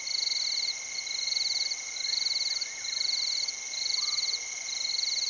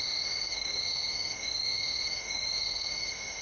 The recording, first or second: first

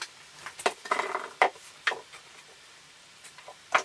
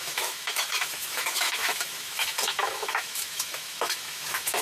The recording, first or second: first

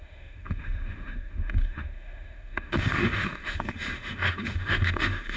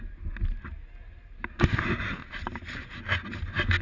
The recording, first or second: second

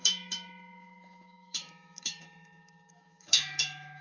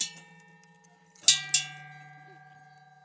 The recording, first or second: second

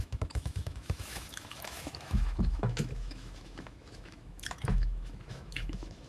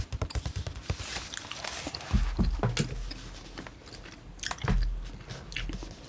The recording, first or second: second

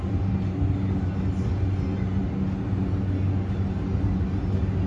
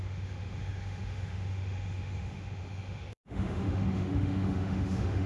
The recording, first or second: first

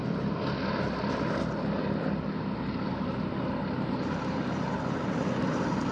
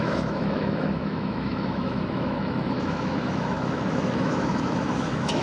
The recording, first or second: first